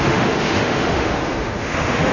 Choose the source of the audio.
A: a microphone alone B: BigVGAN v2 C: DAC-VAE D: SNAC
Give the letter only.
C